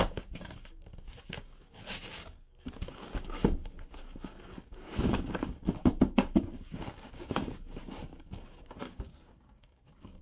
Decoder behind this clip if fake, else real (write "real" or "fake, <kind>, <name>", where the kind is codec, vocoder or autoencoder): fake, codec, DAC